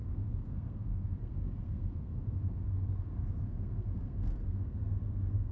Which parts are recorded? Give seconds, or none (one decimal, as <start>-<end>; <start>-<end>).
none